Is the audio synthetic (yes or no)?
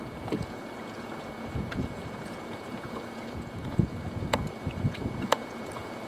yes